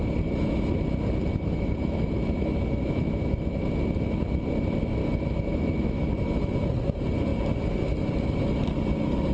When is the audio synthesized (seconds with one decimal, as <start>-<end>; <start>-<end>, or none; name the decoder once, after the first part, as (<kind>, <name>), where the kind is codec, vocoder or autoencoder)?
1.3-3.7 (autoencoder, DAC-VAE); 5.0-6.1